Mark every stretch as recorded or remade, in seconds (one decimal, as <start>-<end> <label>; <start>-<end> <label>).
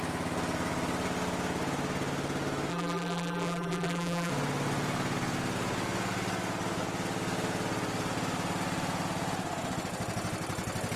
0.0-2.7 recorded; 2.7-4.3 remade; 4.3-11.0 recorded